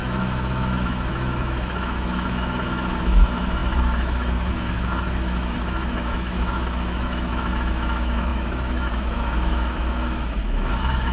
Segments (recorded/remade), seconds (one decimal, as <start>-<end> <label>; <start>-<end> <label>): 0.0-11.1 remade